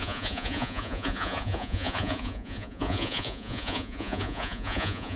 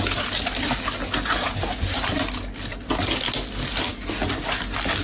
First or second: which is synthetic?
first